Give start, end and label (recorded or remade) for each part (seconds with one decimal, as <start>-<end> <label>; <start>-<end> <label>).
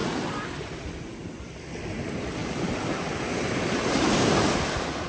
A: 0.0-0.9 remade; 0.9-2.4 recorded; 2.4-4.5 remade; 4.5-5.1 recorded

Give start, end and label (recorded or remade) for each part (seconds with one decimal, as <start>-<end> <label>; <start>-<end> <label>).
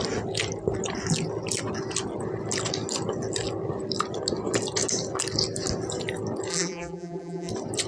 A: 0.0-6.5 recorded; 6.5-7.5 remade; 7.5-7.9 recorded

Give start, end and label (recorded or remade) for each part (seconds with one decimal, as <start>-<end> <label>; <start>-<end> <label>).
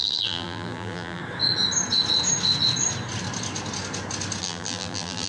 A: 0.0-1.2 remade; 1.2-4.4 recorded; 4.4-5.3 remade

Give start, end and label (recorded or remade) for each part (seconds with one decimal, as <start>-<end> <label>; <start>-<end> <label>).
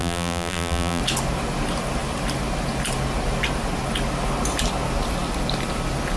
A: 0.0-1.0 remade; 1.0-6.2 recorded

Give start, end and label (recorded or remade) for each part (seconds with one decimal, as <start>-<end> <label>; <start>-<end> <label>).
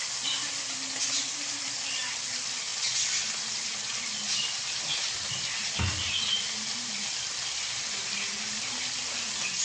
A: 0.0-9.6 recorded